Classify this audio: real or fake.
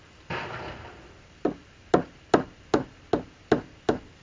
real